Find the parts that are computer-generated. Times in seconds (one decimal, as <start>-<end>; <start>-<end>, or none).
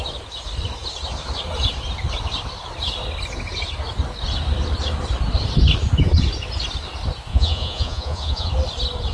7.3-8.5